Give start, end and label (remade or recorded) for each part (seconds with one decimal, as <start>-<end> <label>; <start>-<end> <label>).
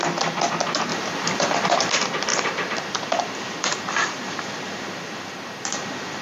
0.0-0.9 recorded; 0.9-1.9 remade; 1.9-2.3 recorded; 2.3-6.2 remade